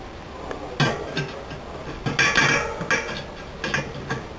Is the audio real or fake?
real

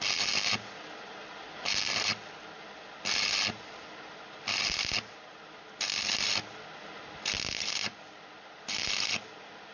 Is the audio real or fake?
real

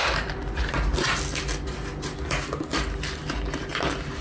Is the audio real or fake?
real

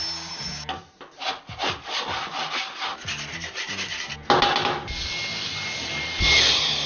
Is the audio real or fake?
real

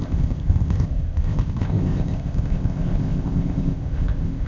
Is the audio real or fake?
fake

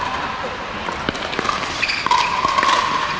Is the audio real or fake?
real